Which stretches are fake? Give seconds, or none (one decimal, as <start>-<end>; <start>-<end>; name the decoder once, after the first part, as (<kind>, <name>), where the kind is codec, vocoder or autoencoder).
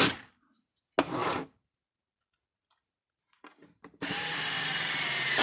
1.2-2.1 (vocoder, BigVGAN v2); 2.5-5.4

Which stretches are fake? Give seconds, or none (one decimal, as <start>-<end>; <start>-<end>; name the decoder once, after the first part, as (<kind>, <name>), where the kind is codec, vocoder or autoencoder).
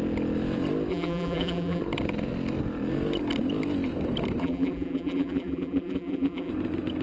0.9-1.8 (vocoder, BigVGAN v2); 4.4-6.5